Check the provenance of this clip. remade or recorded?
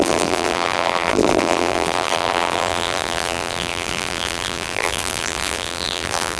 remade